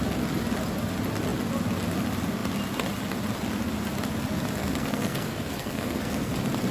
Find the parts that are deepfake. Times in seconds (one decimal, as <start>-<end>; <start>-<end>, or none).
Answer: 4.6-6.3